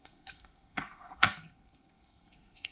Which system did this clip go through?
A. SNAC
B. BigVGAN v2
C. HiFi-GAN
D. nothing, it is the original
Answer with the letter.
A